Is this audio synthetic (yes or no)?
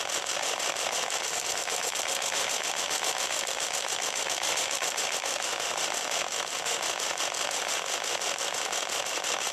yes